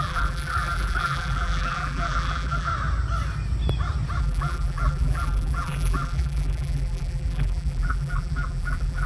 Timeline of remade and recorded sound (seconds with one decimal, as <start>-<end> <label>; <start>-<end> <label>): 0.0-2.7 remade; 2.7-4.2 recorded; 4.2-9.1 remade